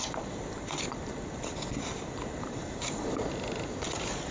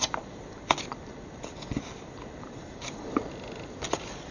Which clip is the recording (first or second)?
second